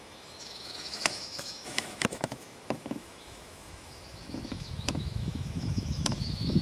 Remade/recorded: remade